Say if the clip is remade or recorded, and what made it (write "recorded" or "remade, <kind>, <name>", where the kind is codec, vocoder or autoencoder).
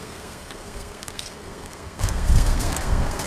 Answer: remade, codec, SNAC